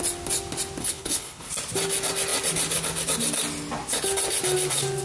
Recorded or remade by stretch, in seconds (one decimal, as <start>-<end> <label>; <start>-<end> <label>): 0.0-0.8 recorded; 0.8-1.5 remade; 1.5-5.0 recorded